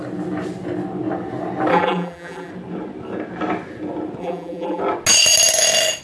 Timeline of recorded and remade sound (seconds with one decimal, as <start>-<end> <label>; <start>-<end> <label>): 0.0-1.7 recorded; 1.7-2.5 remade; 2.5-4.2 recorded; 4.2-4.8 remade; 4.8-6.0 recorded